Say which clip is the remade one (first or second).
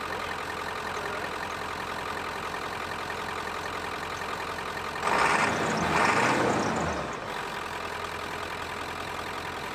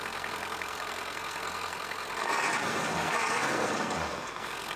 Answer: second